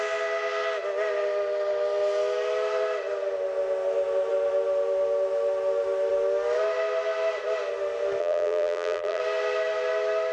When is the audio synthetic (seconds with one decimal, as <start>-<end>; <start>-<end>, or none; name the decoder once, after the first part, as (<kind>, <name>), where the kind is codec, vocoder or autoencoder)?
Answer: 8.2-9.2 (vocoder, BigVGAN v2)